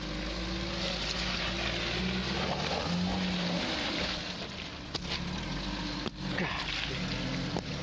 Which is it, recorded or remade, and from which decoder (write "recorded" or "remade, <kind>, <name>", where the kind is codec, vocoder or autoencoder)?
recorded